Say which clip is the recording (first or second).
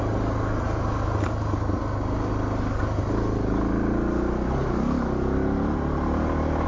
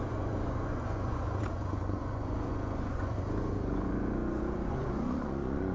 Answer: first